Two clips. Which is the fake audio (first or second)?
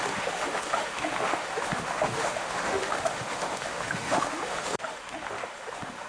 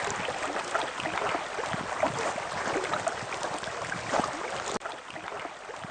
first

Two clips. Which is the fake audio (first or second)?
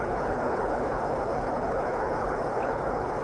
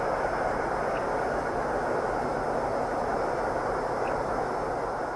first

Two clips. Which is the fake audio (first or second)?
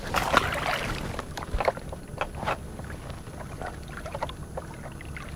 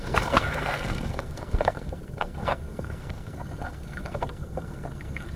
second